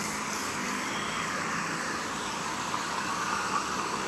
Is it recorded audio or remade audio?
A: remade